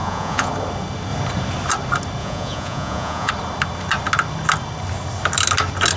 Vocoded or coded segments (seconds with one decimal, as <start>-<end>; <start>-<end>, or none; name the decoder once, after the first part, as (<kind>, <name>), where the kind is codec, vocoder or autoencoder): 0.0-0.5 (vocoder, Vocos); 2.2-3.3